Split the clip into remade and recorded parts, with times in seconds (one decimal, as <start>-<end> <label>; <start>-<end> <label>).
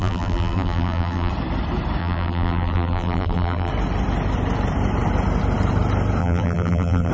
0.0-1.3 remade; 1.3-2.0 recorded; 2.0-3.7 remade; 3.7-6.2 recorded; 6.2-7.1 remade